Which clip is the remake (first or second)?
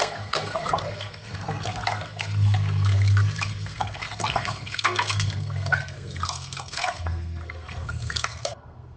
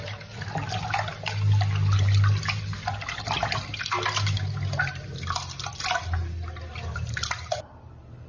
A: first